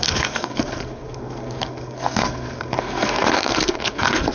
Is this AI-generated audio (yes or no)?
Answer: yes